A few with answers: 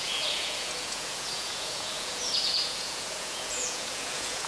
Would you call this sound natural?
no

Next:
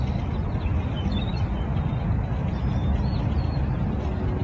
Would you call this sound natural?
yes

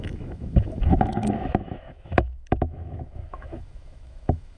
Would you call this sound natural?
no